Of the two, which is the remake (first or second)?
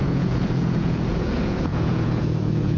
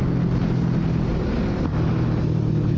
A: first